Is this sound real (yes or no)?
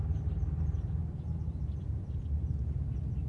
yes